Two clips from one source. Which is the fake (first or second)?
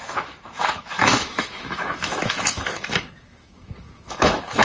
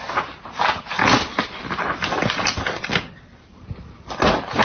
first